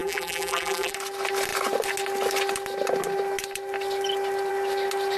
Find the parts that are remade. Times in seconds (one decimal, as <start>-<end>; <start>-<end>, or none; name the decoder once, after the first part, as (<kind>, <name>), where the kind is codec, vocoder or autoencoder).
0.0-0.9 (vocoder, BigVGAN v2)